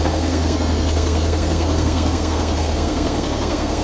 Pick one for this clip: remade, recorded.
remade